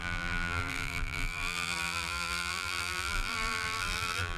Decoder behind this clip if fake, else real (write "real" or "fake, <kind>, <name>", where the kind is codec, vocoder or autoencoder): fake, vocoder, BigVGAN v2